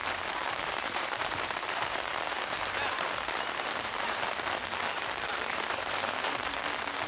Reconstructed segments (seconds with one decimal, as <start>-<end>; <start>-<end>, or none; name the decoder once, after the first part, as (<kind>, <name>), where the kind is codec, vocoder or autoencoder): 0.0-4.3 (vocoder, BigVGAN v2); 5.3-6.6